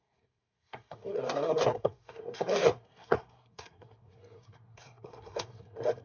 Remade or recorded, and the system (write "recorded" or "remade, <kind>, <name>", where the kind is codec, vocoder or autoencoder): remade, codec, SNAC